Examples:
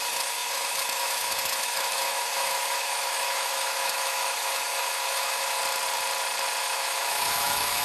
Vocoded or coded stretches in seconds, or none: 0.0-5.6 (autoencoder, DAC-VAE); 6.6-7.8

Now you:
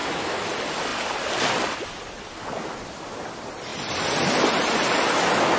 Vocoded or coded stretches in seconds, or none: 0.0-0.5 (autoencoder, DAC-VAE)

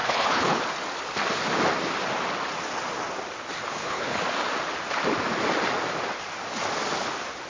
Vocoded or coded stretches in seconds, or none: 0.0-0.6 (codec, HILCodec); 3.7-4.2